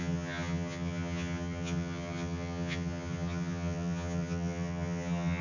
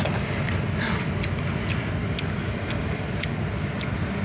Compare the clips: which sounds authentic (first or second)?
second